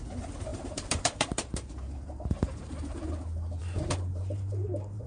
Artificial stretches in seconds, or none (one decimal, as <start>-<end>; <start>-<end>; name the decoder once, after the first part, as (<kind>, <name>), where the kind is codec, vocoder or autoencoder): 0.5-3.1 (vocoder, BigVGAN v2); 3.6-5.1